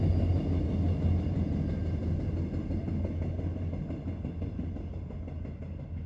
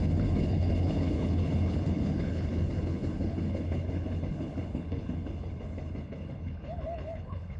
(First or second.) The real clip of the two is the first